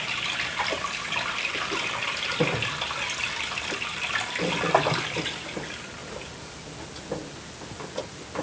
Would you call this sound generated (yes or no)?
no